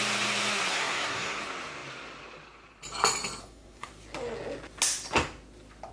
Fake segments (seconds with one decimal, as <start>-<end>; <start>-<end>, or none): 0.7-1.4; 3.4-3.9